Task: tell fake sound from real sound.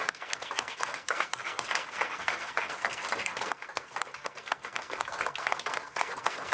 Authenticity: fake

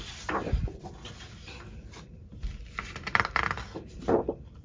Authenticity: real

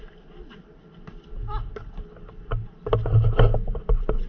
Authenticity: real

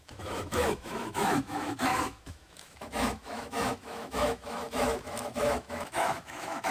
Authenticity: fake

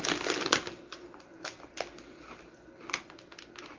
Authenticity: real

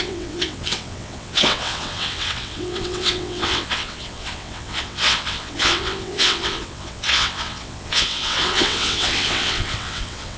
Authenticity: fake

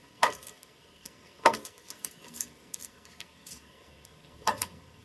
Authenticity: fake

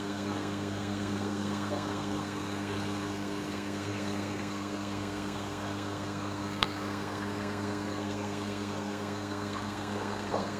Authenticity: fake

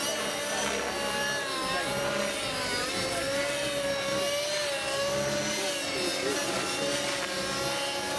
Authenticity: real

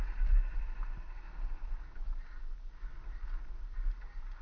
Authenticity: real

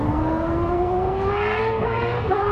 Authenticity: fake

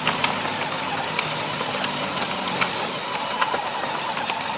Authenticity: real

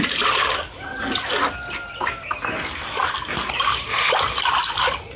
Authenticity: real